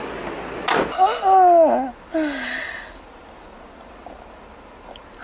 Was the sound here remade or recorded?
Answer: recorded